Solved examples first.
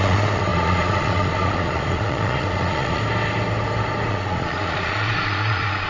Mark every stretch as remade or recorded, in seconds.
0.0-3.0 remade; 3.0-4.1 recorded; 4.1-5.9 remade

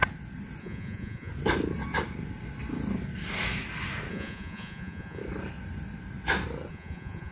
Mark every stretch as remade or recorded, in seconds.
0.0-0.6 recorded; 0.6-1.3 remade; 1.3-4.1 recorded; 4.1-5.2 remade; 5.2-6.7 recorded; 6.7-7.3 remade